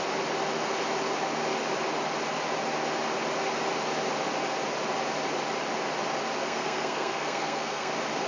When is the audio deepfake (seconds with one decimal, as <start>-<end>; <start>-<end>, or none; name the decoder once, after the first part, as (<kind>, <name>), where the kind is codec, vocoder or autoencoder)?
6.4-7.9 (codec, SNAC)